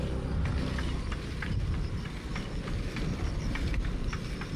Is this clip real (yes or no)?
yes